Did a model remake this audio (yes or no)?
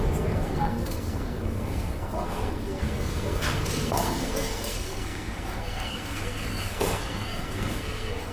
yes